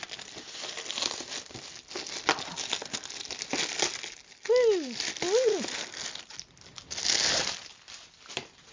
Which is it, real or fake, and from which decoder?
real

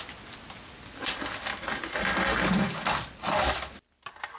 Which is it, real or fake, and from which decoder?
real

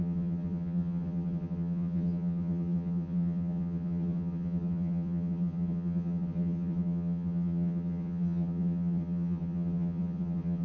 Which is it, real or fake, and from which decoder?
fake, vocoder, HiFi-GAN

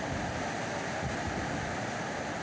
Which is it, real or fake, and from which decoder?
real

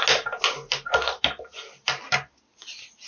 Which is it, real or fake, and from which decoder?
real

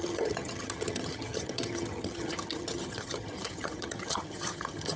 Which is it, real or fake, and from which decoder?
fake, vocoder, HiFi-GAN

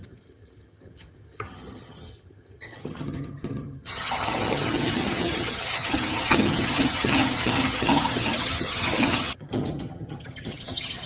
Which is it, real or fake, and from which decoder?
fake, vocoder, HiFi-GAN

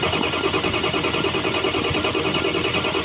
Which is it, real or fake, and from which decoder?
real